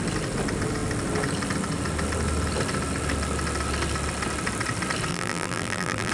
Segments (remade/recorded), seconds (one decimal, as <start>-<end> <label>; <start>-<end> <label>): 0.0-5.1 recorded; 5.1-6.1 remade